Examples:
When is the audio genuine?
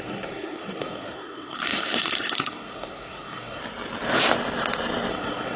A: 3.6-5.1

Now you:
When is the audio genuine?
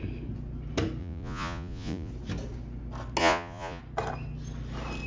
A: 0.0-1.0; 2.1-3.2; 3.8-5.1